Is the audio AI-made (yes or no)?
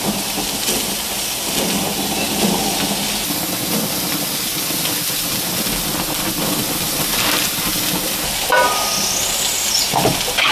no